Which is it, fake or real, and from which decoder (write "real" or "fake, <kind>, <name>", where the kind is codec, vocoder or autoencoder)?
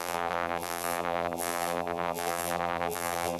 fake, vocoder, BigVGAN v2